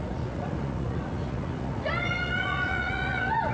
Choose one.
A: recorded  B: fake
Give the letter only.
B